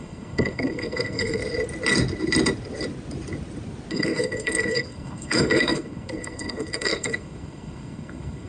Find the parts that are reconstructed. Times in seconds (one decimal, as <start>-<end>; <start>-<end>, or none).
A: 0.0-1.4; 3.9-8.5